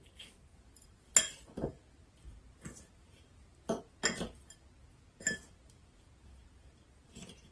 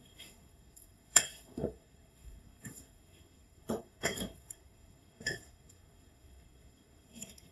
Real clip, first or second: first